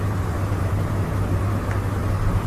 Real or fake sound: real